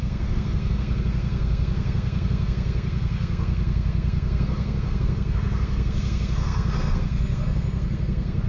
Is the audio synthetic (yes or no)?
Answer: yes